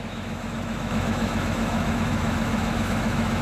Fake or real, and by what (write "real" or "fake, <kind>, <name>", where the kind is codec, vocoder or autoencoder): fake, autoencoder, DAC-VAE